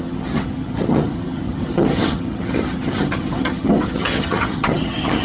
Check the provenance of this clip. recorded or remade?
remade